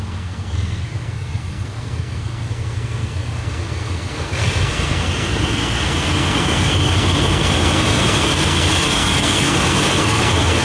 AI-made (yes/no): yes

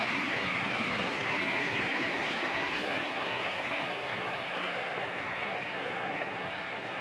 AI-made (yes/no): yes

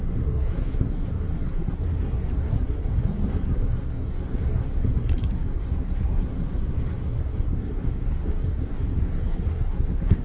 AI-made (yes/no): yes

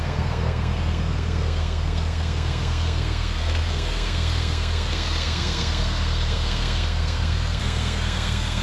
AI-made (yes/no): yes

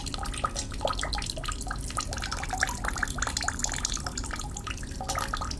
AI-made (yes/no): no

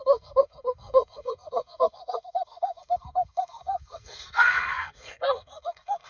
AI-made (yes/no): yes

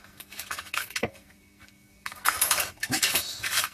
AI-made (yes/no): yes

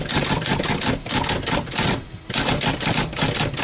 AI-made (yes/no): no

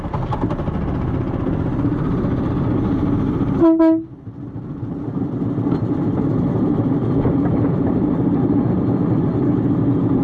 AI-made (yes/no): no